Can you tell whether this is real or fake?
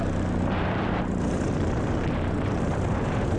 fake